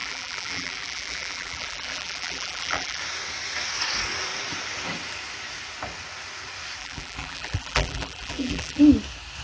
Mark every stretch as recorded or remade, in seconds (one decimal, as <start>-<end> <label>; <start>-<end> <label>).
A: 0.0-3.0 remade; 3.0-6.8 recorded; 6.8-8.8 remade; 8.8-9.4 recorded